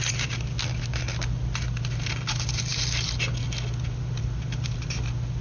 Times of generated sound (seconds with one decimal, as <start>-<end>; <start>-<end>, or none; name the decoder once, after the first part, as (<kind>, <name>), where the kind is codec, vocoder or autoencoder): none